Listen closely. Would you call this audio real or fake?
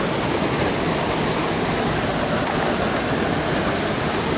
real